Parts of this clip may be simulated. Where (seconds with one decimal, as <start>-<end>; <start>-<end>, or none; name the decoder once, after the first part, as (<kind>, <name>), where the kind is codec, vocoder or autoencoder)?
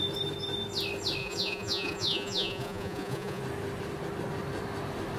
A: 1.2-3.4 (vocoder, Vocos)